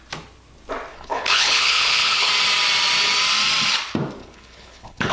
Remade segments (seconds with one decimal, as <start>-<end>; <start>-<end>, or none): 0.9-2.3; 4.2-5.1